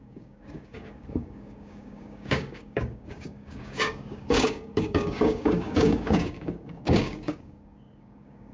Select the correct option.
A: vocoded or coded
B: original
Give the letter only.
A